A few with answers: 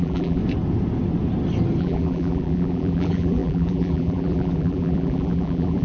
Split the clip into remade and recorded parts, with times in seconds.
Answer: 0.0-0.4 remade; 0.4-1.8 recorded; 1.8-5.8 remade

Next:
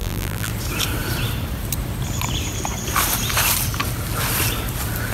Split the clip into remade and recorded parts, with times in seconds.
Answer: 0.0-0.5 remade; 0.5-5.1 recorded